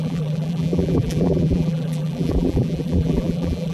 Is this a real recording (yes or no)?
no